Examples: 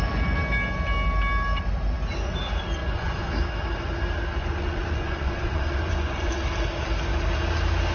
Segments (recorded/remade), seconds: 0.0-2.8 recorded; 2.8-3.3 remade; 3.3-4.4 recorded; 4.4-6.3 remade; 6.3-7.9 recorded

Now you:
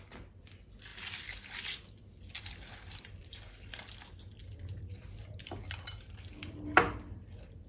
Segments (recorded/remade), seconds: 0.0-7.7 recorded

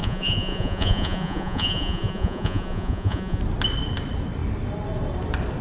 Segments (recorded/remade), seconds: 0.0-3.4 remade; 3.4-5.6 recorded